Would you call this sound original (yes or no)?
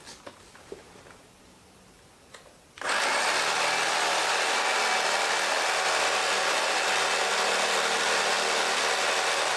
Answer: yes